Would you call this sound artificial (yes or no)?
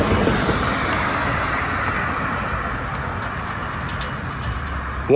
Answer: no